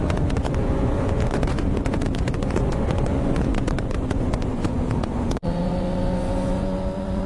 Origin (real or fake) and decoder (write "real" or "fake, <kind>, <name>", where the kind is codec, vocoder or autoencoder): fake, vocoder, Vocos